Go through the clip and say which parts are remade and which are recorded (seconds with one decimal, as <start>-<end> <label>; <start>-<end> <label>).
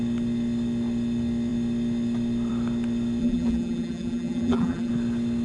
0.0-3.2 recorded; 3.2-4.9 remade; 4.9-5.4 recorded